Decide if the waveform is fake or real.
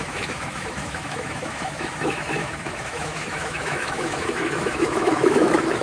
fake